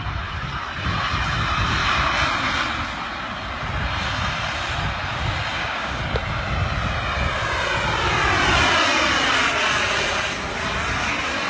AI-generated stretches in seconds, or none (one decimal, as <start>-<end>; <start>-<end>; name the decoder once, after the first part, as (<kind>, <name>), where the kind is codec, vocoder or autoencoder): 5.5-6.0 (codec, DAC)